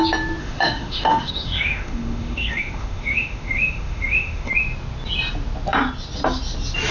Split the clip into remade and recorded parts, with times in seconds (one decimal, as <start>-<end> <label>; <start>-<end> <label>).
0.0-0.4 recorded; 0.4-4.5 remade; 4.5-6.9 recorded